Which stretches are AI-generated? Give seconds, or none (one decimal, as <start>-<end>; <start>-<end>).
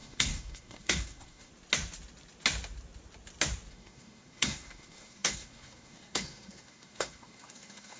0.0-1.5; 3.7-8.0